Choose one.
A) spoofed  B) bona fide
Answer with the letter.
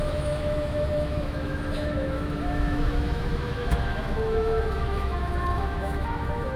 A